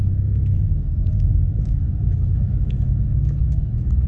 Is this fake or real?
fake